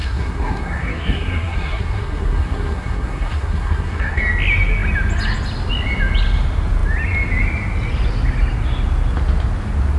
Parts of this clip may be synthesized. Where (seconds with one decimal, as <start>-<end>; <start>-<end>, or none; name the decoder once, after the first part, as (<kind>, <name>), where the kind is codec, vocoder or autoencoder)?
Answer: 0.0-4.2 (codec, SNAC)